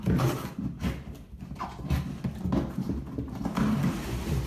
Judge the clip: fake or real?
real